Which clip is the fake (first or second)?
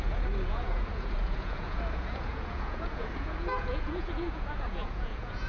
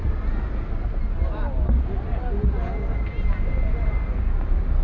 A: first